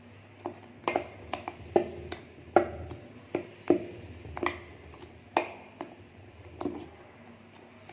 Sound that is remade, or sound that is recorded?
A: recorded